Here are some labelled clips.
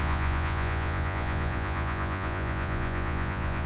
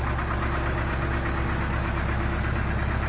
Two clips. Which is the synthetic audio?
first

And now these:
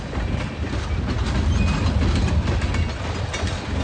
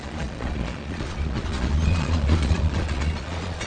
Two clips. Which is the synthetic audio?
second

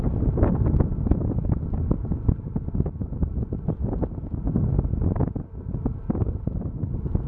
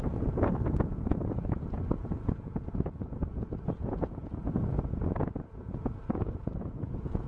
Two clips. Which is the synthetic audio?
second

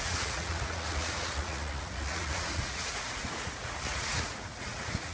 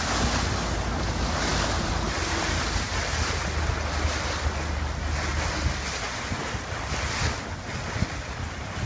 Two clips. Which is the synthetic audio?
first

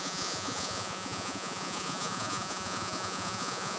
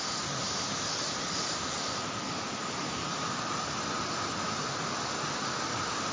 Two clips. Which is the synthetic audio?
first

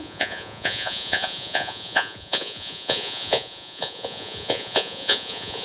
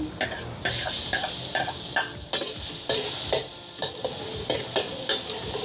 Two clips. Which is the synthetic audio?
first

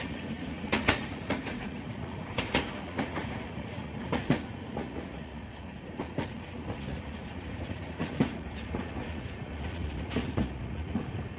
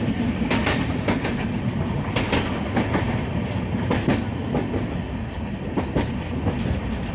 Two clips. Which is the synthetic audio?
first